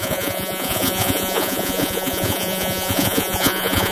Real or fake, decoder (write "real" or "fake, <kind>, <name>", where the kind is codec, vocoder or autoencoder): fake, vocoder, Vocos